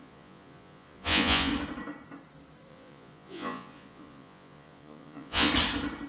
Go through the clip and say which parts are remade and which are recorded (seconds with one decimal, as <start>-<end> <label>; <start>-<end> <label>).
0.0-1.5 remade; 1.5-2.7 recorded; 2.7-5.5 remade; 5.5-6.1 recorded